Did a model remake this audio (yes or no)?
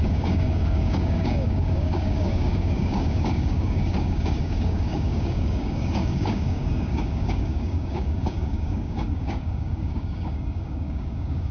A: yes